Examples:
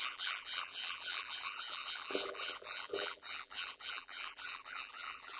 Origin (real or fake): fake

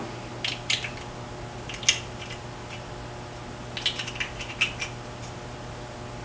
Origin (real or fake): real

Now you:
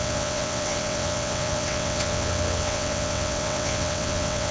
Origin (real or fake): fake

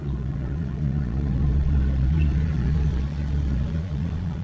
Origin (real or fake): fake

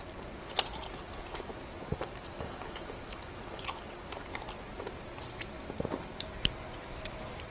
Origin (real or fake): real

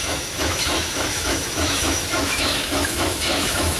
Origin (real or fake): fake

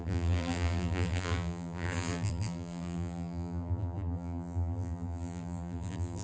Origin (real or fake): fake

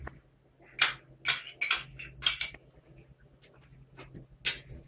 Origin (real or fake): real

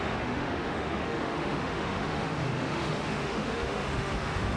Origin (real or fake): fake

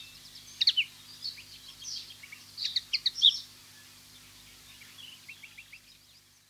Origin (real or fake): fake